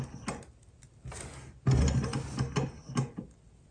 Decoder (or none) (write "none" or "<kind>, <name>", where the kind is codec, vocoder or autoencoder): none